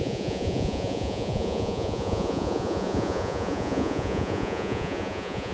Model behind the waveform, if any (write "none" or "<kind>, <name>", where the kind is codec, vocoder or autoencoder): vocoder, Vocos